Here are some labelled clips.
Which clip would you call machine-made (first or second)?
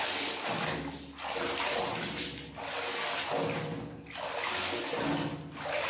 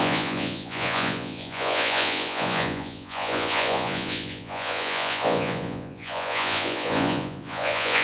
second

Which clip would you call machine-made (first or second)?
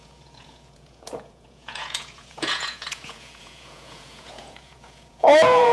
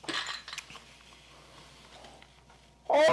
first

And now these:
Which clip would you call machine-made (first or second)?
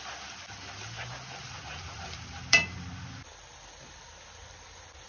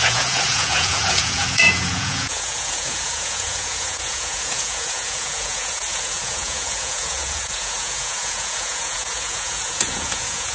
second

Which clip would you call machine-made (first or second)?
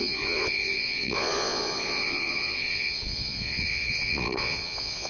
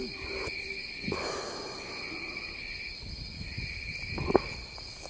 first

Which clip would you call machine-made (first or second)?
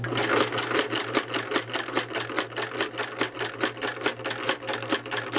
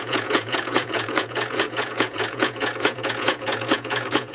second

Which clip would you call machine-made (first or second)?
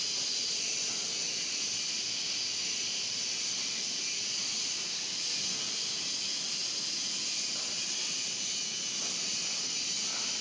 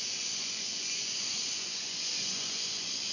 second